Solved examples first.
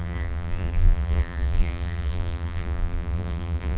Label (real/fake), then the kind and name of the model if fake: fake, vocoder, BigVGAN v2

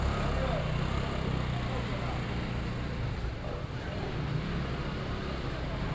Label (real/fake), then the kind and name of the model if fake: real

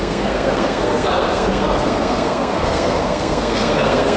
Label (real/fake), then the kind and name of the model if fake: fake, codec, SNAC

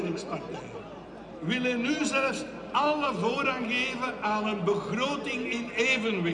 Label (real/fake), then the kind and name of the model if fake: real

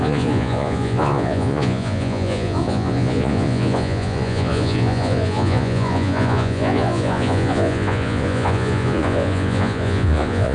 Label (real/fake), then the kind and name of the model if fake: fake, vocoder, Vocos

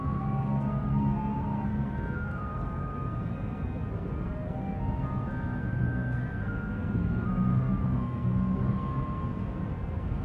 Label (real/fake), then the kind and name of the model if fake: fake, codec, SNAC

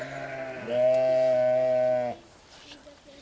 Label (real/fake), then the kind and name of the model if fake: real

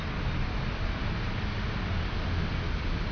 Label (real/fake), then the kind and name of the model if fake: real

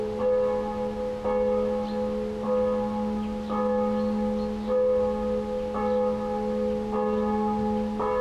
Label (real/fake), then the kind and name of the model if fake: real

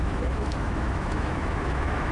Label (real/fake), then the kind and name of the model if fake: fake, autoencoder, DAC-VAE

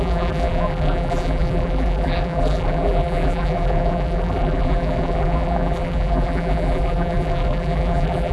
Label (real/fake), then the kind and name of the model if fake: fake, vocoder, BigVGAN v2